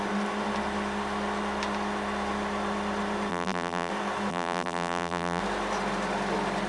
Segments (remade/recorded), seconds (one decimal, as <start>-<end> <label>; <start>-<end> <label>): 0.0-3.3 recorded; 3.3-3.9 remade; 3.9-4.3 recorded; 4.3-5.4 remade; 5.4-6.7 recorded